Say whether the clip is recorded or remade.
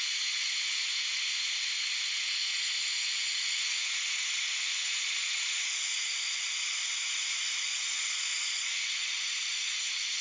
remade